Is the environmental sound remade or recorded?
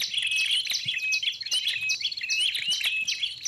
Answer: recorded